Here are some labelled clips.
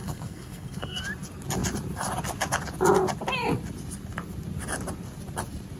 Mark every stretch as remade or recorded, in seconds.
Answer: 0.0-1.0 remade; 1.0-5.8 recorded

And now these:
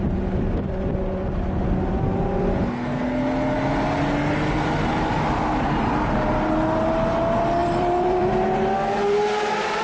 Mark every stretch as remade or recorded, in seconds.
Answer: 0.0-7.6 recorded; 7.6-8.3 remade; 8.3-9.8 recorded

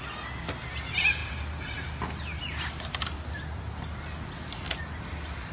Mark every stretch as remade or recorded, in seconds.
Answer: 0.0-5.5 recorded

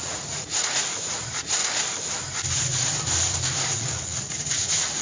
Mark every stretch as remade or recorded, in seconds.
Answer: 0.0-1.6 remade; 1.6-3.7 recorded; 3.7-5.0 remade

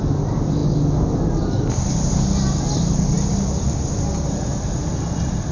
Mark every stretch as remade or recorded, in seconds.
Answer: 0.0-5.5 recorded

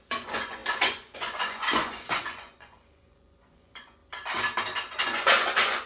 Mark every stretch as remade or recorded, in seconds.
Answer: 0.0-4.0 remade; 4.0-4.9 recorded; 4.9-5.9 remade

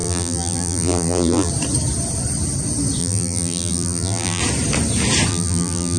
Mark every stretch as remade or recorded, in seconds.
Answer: 0.0-1.5 remade; 1.5-3.0 recorded; 3.0-4.4 remade; 4.4-5.3 recorded; 5.3-6.0 remade

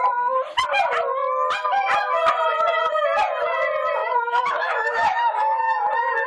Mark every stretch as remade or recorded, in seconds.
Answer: 0.0-4.0 recorded; 4.0-5.6 remade; 5.6-6.3 recorded